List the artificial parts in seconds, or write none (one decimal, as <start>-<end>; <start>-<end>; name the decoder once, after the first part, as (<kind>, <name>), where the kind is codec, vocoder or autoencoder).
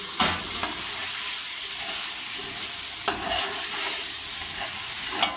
none